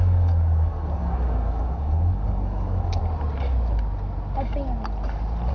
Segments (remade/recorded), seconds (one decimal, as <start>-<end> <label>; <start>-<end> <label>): 0.0-3.0 remade; 3.0-5.5 recorded